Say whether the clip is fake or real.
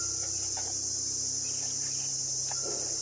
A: fake